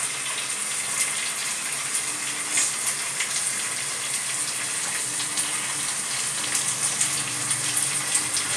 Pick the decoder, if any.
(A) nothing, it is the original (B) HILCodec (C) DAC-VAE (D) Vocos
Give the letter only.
A